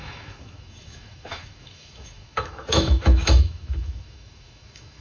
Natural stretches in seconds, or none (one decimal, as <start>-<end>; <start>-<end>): none